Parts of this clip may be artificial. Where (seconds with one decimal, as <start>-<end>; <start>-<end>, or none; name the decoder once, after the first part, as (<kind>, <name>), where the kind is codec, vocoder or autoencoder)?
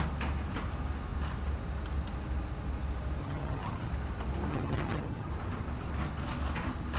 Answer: 3.2-3.9 (vocoder, HiFi-GAN); 4.5-5.3